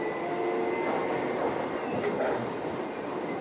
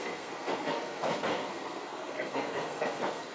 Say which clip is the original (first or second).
first